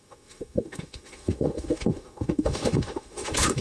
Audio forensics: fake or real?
fake